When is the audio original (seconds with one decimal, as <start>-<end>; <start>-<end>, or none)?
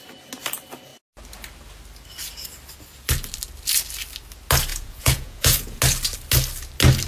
0.0-4.7; 5.8-7.1